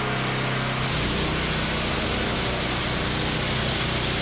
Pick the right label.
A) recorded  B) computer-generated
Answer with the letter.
A